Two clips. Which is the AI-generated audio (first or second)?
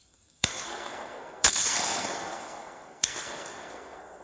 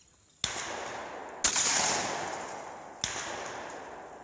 first